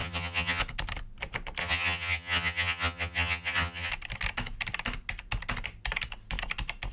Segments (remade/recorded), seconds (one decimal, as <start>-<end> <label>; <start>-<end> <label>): 0.0-0.6 remade; 0.6-1.6 recorded; 1.6-3.9 remade; 3.9-6.9 recorded